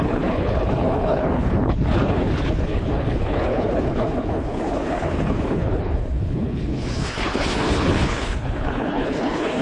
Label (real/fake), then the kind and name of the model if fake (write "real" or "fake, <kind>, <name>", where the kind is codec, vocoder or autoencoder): fake, codec, HILCodec